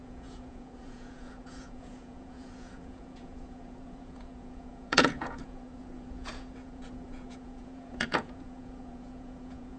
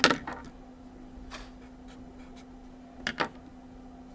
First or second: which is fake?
first